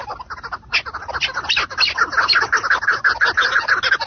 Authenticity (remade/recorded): remade